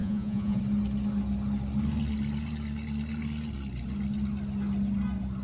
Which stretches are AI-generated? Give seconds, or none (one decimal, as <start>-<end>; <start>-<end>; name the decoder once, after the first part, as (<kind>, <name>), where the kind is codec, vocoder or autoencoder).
0.0-0.6 (vocoder, Vocos)